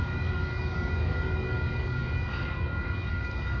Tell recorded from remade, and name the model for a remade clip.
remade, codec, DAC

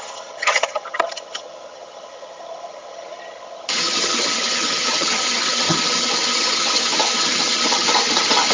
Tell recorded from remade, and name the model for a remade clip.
remade, vocoder, HiFi-GAN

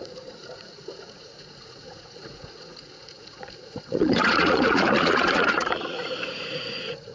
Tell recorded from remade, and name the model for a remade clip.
remade, vocoder, Vocos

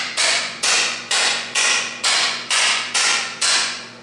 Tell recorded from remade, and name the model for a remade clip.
remade, vocoder, Vocos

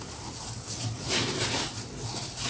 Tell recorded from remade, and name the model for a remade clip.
recorded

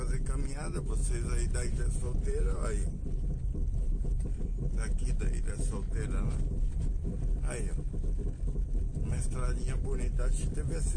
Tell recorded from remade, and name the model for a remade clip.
recorded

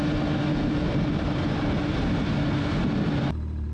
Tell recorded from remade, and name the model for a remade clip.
recorded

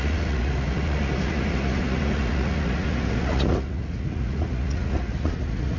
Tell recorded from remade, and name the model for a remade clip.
remade, vocoder, Vocos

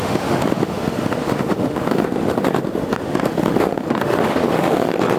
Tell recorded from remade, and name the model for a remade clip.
remade, autoencoder, DAC-VAE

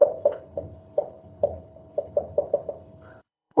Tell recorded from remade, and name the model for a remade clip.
remade, codec, HILCodec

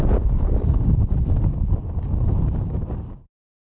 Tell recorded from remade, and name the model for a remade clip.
recorded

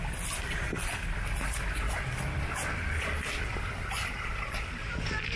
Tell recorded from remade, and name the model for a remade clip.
remade, vocoder, BigVGAN v2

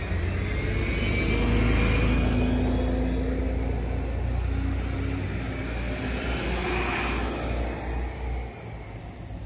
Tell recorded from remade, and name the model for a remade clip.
recorded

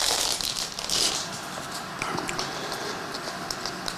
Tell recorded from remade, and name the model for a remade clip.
recorded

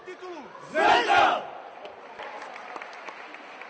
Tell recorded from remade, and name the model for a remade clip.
recorded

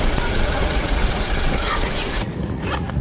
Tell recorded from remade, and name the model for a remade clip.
remade, vocoder, Vocos